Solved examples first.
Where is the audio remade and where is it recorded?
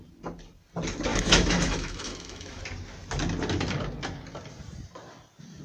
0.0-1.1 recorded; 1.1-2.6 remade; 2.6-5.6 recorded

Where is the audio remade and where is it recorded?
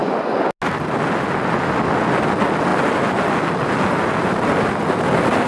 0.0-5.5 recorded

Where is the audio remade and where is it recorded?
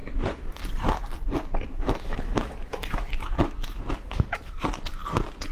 0.0-0.6 remade; 0.6-1.7 recorded; 1.7-4.6 remade; 4.6-5.5 recorded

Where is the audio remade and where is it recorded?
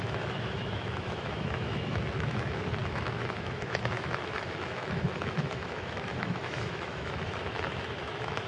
0.0-8.5 remade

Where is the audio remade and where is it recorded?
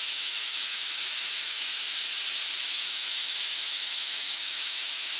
0.0-2.0 remade; 2.0-2.7 recorded; 2.7-5.2 remade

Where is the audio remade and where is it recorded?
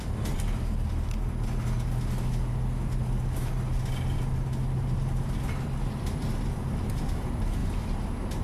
0.0-8.4 recorded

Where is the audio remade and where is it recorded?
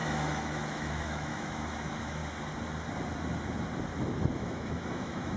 0.0-2.2 remade; 2.2-4.3 recorded; 4.3-5.4 remade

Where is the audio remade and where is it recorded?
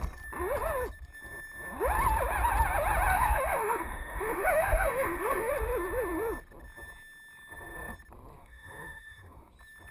0.0-3.1 recorded; 3.1-5.5 remade; 5.5-8.4 recorded; 8.4-9.5 remade; 9.5-9.9 recorded